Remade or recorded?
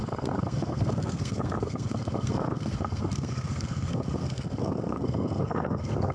remade